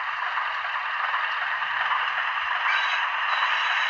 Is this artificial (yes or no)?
no